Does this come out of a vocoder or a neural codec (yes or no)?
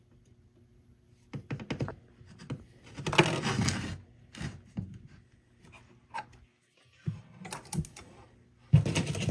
no